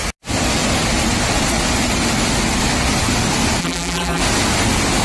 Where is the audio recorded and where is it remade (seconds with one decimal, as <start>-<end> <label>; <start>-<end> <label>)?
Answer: 0.0-3.6 recorded; 3.6-4.2 remade; 4.2-5.0 recorded